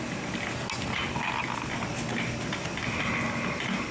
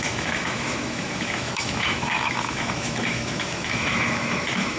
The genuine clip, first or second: first